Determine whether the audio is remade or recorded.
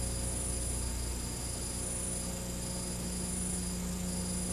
recorded